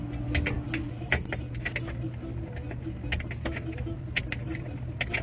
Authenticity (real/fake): real